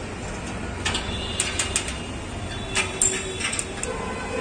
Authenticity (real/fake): real